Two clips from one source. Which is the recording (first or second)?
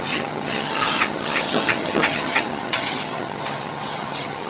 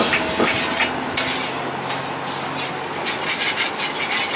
second